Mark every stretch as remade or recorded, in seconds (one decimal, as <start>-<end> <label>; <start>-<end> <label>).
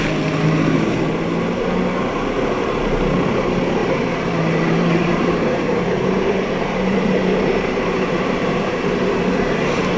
0.0-3.8 recorded; 3.8-8.8 remade; 8.8-10.0 recorded